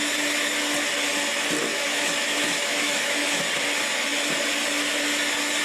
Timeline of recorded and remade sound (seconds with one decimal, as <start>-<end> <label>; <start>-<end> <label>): 0.0-1.7 recorded; 1.7-3.4 remade; 3.4-5.6 recorded

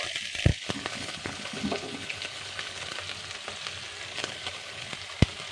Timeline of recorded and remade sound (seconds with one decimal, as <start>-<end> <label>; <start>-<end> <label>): 0.0-0.5 recorded; 0.5-3.0 remade; 3.0-4.1 recorded; 4.1-4.9 remade; 4.9-5.5 recorded

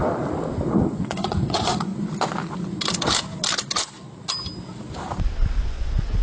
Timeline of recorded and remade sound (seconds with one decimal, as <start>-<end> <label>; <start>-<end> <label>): 0.0-0.9 recorded; 0.9-1.9 remade; 1.9-5.6 recorded; 5.6-6.2 remade

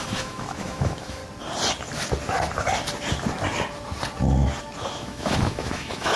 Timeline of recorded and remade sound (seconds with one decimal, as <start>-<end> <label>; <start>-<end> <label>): 0.0-1.2 remade; 1.2-4.9 recorded; 4.9-6.2 remade